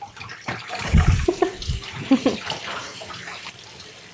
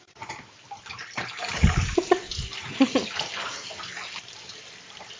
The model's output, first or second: first